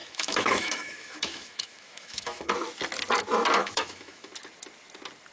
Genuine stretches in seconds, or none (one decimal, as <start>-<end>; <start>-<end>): 2.5-3.6; 4.3-5.3